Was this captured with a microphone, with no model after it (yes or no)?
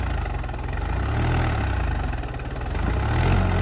yes